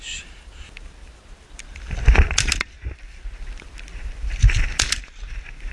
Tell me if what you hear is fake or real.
real